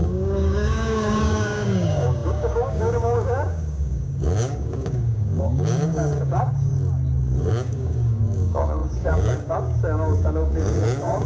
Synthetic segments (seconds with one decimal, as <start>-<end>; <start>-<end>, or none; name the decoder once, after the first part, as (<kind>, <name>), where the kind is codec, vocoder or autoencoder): 0.0-6.7 (codec, DAC); 7.5-11.3